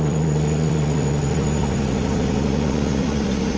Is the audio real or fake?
fake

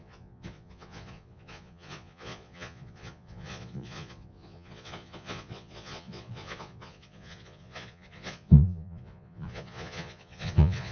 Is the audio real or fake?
fake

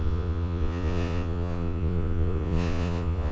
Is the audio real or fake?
fake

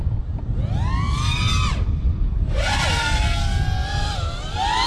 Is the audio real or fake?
real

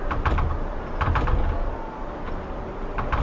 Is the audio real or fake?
real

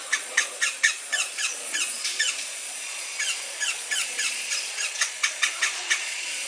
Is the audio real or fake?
fake